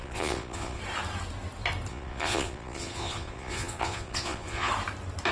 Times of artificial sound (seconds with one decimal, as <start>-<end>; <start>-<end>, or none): 0.0-0.8; 1.9-4.7